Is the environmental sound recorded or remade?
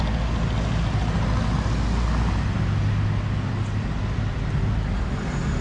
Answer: recorded